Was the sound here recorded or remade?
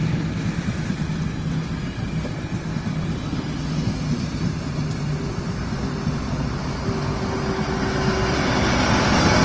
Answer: recorded